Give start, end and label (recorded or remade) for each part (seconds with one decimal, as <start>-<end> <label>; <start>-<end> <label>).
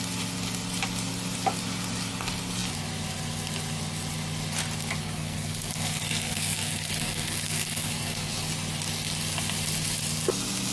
0.0-5.0 recorded; 5.0-8.3 remade; 8.3-10.7 recorded